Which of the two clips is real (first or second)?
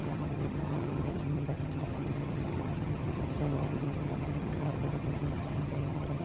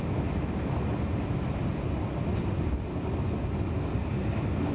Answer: second